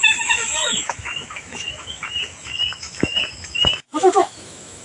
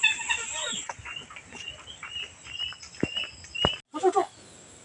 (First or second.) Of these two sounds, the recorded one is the second